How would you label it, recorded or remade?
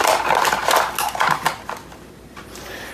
recorded